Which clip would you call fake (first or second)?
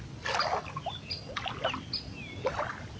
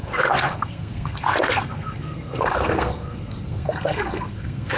second